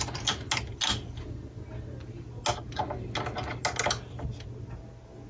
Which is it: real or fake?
real